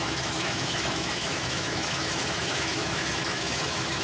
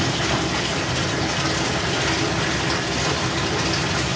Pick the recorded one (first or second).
second